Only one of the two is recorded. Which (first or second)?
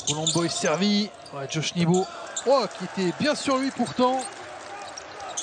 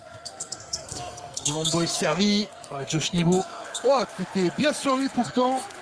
first